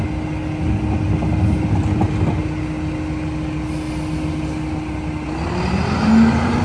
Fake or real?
real